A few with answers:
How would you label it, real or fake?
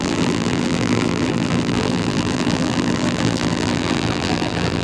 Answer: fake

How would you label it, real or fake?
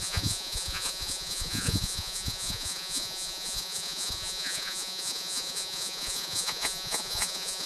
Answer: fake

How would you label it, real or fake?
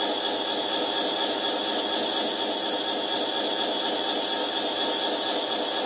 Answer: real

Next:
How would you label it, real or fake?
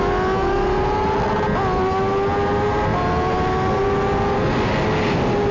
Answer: real